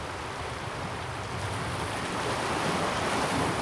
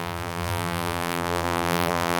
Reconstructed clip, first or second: second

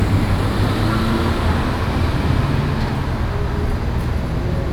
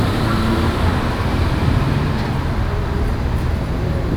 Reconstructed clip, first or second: second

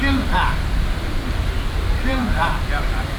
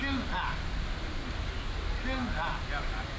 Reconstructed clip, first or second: first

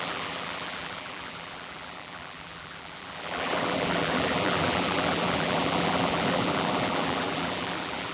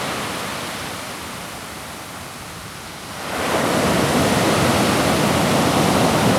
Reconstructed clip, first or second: first